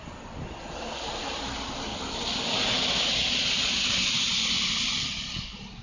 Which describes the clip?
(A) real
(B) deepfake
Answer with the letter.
A